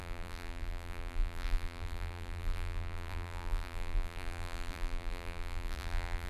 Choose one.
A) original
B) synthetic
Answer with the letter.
B